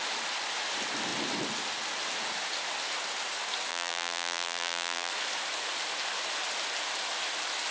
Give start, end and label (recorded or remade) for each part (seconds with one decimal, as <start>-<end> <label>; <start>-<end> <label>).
0.0-3.7 recorded; 3.7-5.1 remade; 5.1-7.7 recorded